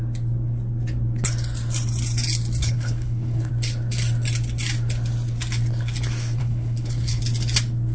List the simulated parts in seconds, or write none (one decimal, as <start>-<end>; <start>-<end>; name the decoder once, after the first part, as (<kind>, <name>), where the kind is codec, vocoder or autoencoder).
2.6-3.5 (codec, HILCodec); 6.4-7.2